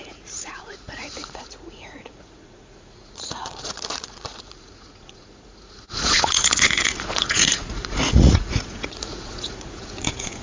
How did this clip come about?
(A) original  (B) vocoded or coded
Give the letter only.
B